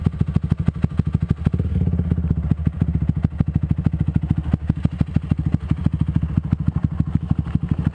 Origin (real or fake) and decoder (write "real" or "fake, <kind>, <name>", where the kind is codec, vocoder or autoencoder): real